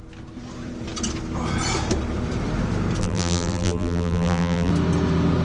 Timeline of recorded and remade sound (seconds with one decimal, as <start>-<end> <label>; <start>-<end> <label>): 0.0-3.0 recorded; 3.0-4.7 remade; 4.7-5.4 recorded